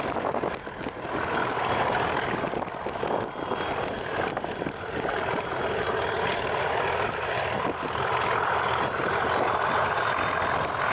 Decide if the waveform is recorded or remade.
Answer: recorded